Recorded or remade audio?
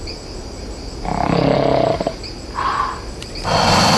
recorded